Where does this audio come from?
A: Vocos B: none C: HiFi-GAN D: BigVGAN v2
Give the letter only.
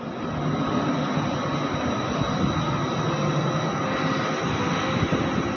B